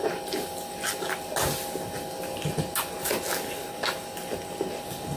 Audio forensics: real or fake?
real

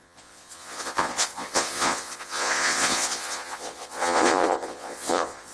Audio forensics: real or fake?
fake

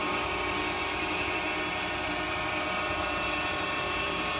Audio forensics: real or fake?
fake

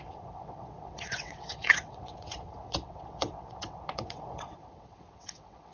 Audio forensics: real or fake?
fake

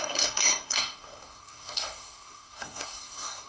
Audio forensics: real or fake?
fake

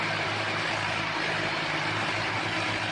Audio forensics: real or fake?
fake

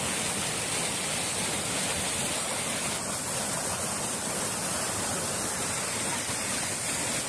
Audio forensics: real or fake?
real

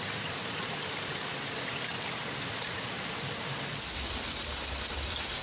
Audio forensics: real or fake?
real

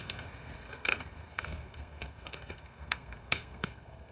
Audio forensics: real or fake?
fake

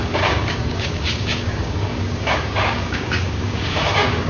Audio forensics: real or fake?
fake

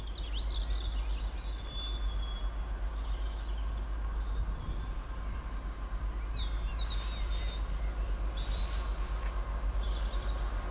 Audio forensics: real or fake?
real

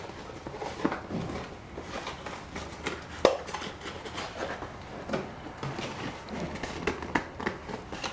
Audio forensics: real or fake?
real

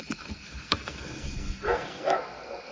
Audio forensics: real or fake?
fake